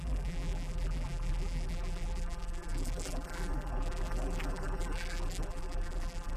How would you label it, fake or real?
fake